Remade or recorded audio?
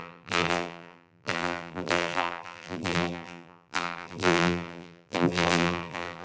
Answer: remade